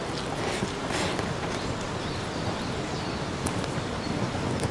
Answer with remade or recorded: recorded